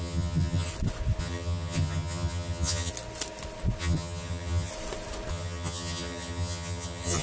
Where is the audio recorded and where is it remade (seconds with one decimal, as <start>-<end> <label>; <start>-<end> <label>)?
0.0-0.7 remade; 0.7-1.2 recorded; 1.2-2.9 remade; 2.9-3.8 recorded; 3.8-4.7 remade; 4.7-5.3 recorded; 5.3-7.2 remade